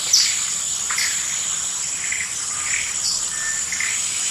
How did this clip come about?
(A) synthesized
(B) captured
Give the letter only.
B